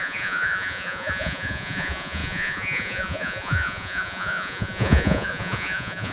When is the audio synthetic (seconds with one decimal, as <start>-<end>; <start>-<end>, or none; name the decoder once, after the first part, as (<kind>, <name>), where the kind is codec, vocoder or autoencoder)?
0.0-6.1 (vocoder, Vocos)